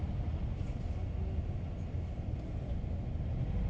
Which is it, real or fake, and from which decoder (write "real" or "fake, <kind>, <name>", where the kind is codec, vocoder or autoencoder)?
real